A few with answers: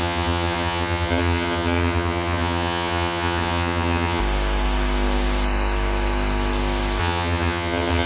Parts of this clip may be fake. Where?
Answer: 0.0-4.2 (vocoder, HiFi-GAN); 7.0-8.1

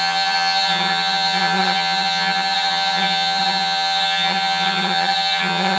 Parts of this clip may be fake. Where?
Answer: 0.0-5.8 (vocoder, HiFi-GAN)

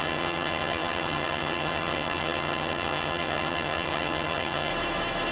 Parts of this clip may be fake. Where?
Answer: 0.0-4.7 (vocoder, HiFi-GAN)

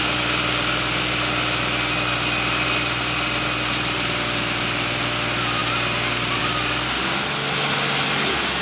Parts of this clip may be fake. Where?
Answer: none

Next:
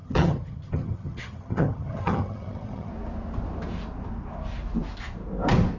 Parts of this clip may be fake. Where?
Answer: 0.0-2.9 (vocoder, HiFi-GAN)

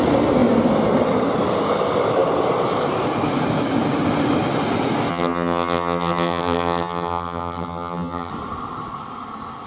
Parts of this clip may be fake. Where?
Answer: 5.1-8.3 (vocoder, HiFi-GAN)

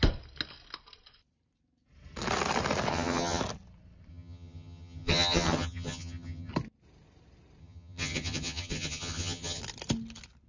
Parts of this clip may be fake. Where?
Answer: 2.9-3.4 (vocoder, HiFi-GAN); 4.1-6.5; 7.6-9.6

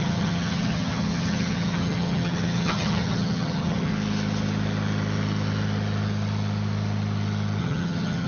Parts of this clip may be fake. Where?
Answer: 0.0-3.9 (vocoder, HiFi-GAN); 7.6-8.3